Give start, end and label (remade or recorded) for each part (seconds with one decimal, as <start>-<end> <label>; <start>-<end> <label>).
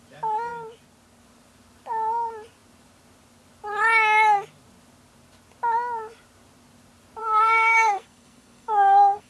0.0-7.2 recorded; 7.2-9.3 remade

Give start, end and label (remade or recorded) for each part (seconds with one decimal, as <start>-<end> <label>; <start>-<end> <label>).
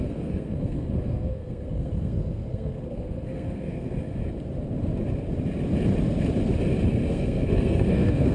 0.0-4.2 remade; 4.2-7.1 recorded; 7.1-8.3 remade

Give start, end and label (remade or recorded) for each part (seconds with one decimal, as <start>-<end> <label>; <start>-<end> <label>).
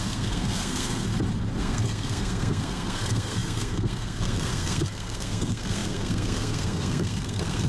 0.0-1.1 remade; 1.1-1.6 recorded; 1.6-7.7 remade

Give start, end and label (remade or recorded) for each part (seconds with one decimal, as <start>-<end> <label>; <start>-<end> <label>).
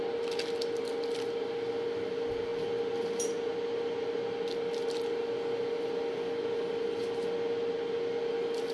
0.0-8.7 recorded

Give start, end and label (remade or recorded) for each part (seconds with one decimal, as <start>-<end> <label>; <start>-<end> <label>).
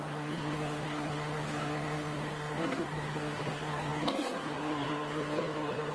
0.0-5.9 remade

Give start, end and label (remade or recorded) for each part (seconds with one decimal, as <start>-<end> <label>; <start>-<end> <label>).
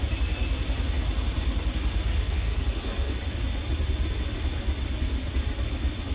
0.0-2.1 recorded; 2.1-3.2 remade; 3.2-6.1 recorded